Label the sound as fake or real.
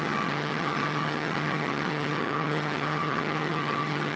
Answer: fake